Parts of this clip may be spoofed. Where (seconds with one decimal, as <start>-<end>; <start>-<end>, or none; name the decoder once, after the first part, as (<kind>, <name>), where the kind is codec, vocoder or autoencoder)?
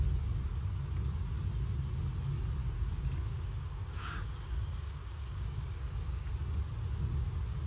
2.6-6.3 (codec, DAC)